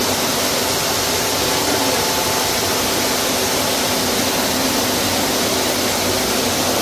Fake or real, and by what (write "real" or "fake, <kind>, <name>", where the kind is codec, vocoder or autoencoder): real